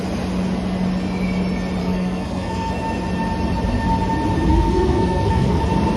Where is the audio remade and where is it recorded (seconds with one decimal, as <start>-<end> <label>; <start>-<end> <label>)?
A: 0.0-1.8 recorded; 1.8-2.7 remade; 2.7-4.5 recorded; 4.5-5.6 remade; 5.6-6.0 recorded